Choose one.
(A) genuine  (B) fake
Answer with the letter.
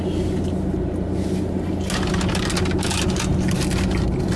A